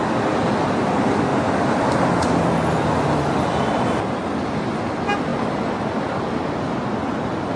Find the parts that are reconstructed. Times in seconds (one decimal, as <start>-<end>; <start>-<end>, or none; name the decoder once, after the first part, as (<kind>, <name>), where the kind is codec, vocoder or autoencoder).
none